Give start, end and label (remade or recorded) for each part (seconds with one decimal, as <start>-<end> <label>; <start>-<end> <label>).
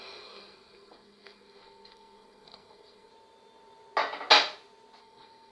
0.0-3.1 remade; 3.1-5.0 recorded; 5.0-5.5 remade